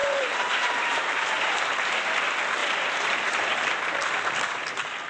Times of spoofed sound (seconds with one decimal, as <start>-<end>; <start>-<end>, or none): 0.0-2.0; 2.6-3.6